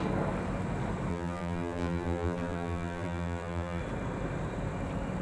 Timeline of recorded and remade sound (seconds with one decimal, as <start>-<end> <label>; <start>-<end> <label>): 0.0-1.1 recorded; 1.1-3.8 remade; 3.8-5.2 recorded